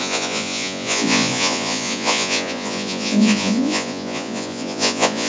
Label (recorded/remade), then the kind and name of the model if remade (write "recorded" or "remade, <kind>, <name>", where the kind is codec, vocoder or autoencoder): remade, vocoder, Vocos